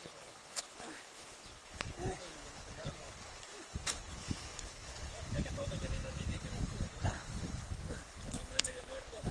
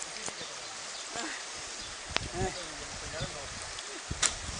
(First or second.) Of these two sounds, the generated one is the first